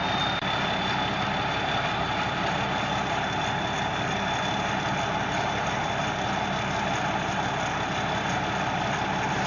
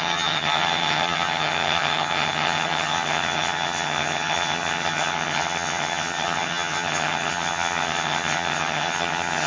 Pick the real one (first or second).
first